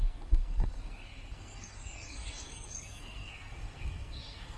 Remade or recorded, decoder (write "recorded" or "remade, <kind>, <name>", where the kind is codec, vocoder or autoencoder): remade, codec, SNAC